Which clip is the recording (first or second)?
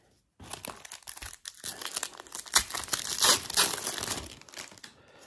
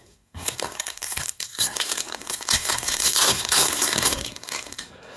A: first